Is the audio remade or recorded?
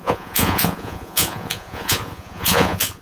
remade